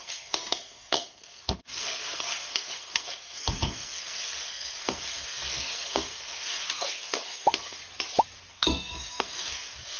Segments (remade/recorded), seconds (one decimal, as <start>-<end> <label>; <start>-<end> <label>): 0.0-7.8 remade; 7.8-8.5 recorded; 8.5-10.0 remade